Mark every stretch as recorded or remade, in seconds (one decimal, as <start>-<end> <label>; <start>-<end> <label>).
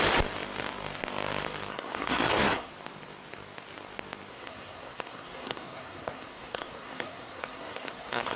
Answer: 0.0-1.7 recorded; 1.7-2.7 remade; 2.7-4.3 recorded; 4.3-8.4 remade